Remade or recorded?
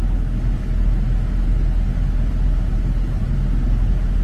recorded